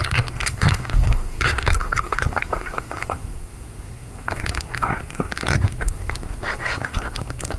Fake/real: fake